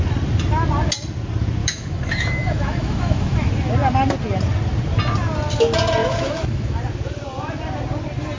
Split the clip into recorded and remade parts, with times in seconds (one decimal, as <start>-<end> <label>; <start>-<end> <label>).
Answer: 0.0-1.6 recorded; 1.6-3.5 remade; 3.5-6.0 recorded; 6.0-6.8 remade; 6.8-8.4 recorded